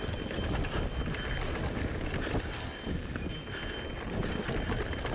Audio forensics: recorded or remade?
recorded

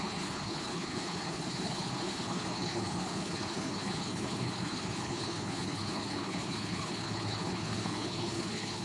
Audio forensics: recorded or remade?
remade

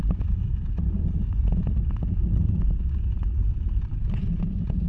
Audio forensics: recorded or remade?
recorded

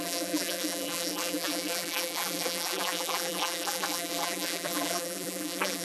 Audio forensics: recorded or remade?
remade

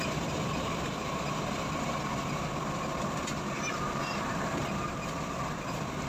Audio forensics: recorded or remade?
remade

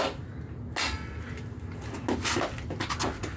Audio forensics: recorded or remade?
recorded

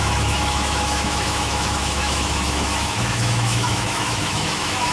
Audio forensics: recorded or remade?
remade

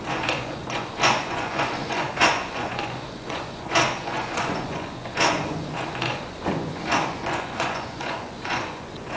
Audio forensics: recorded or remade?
remade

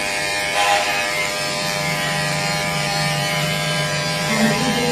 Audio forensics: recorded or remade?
remade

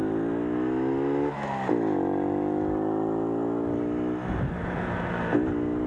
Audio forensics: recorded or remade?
recorded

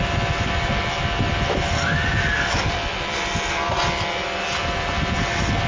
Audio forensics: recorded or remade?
recorded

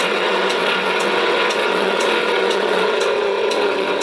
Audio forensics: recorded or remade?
remade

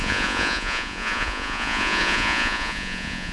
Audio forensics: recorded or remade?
remade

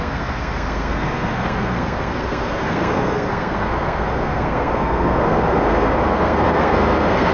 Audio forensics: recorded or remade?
remade